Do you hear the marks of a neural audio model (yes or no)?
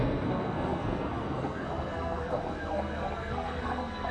yes